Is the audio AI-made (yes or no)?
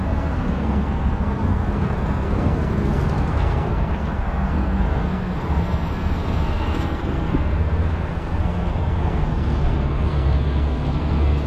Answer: yes